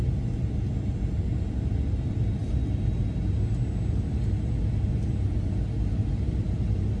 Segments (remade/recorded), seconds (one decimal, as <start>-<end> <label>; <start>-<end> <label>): 0.0-7.0 recorded